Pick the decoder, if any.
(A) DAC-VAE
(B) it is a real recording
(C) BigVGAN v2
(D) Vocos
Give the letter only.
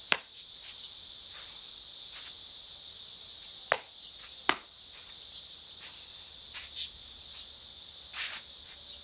B